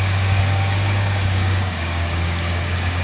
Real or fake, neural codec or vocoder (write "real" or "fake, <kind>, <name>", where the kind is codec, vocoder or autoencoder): fake, codec, DAC